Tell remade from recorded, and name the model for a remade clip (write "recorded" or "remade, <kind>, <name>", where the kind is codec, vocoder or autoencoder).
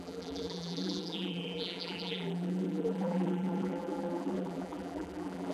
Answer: remade, vocoder, BigVGAN v2